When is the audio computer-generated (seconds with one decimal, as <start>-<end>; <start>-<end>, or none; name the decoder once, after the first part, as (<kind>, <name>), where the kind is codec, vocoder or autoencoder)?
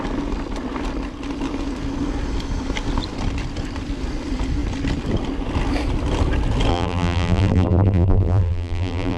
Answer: 6.7-9.2 (vocoder, BigVGAN v2)